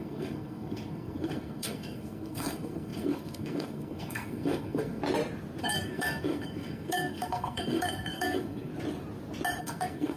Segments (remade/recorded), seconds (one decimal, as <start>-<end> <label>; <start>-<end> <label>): 0.0-5.0 remade; 5.0-5.6 recorded; 5.6-8.7 remade; 8.7-9.6 recorded; 9.6-10.2 remade